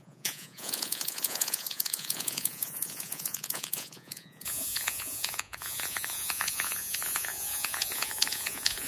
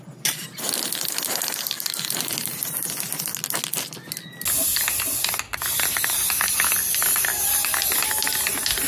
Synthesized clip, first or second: first